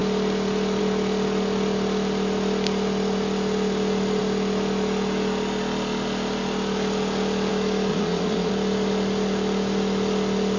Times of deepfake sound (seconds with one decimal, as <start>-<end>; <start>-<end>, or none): 7.9-8.5